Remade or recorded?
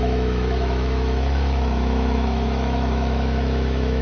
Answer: remade